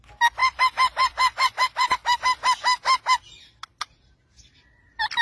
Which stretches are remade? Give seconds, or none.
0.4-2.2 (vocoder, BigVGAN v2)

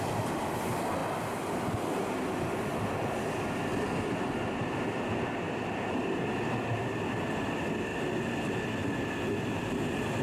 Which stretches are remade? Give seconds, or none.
none